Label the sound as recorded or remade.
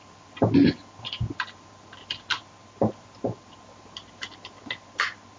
recorded